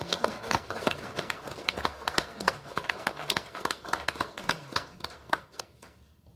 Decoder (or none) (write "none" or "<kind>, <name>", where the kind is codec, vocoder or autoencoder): codec, SNAC